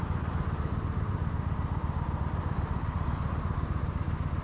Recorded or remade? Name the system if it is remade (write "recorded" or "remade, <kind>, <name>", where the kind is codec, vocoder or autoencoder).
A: recorded